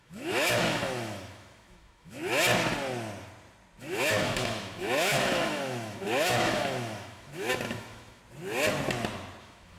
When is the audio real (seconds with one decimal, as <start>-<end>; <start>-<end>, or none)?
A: 2.2-3.8; 8.2-9.4